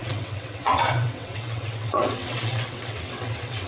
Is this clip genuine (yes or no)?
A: no